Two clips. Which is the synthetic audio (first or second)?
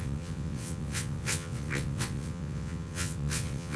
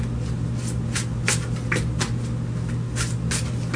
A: first